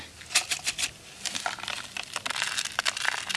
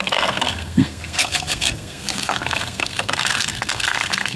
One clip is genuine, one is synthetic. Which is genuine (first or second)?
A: first